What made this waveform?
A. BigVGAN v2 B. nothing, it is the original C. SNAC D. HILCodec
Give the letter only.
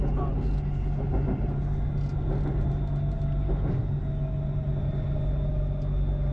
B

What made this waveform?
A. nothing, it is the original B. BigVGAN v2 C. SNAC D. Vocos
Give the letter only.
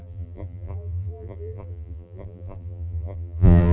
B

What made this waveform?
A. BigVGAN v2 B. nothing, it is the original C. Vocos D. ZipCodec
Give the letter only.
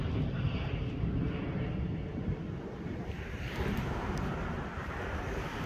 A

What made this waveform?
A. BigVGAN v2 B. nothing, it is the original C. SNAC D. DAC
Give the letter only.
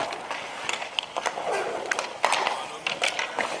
B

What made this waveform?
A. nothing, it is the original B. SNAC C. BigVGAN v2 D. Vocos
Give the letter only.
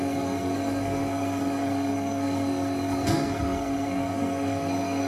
B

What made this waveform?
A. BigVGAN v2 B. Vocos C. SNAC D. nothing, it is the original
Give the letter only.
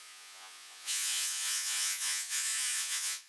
B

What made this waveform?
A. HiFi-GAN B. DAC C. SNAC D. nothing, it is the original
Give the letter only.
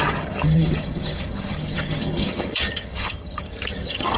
A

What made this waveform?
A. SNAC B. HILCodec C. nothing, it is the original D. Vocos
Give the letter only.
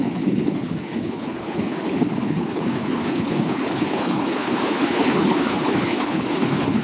B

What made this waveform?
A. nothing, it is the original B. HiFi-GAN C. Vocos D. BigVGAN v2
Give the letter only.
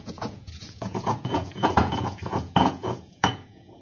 C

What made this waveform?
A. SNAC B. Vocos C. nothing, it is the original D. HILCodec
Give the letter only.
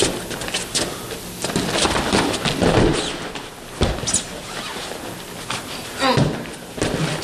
C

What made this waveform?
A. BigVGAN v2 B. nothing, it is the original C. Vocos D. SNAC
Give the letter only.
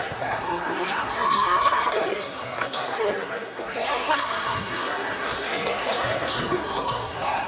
D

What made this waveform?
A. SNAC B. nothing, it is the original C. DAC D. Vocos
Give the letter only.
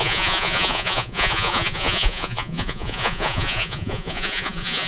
D